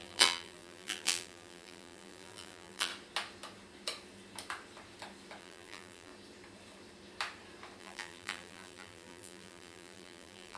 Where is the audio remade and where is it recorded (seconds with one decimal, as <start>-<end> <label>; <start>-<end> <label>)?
0.0-2.9 remade; 2.9-5.4 recorded; 5.4-6.1 remade; 6.1-7.8 recorded; 7.8-10.6 remade